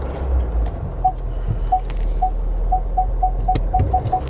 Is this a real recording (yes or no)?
yes